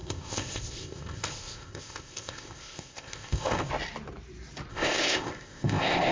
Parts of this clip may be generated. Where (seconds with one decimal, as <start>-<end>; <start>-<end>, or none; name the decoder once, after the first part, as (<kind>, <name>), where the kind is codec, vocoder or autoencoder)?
0.0-3.7 (codec, ZipCodec); 4.7-6.1